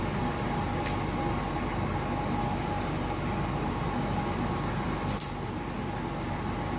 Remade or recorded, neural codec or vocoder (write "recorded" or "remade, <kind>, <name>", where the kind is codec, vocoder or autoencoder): recorded